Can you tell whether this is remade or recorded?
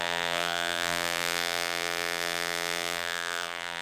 remade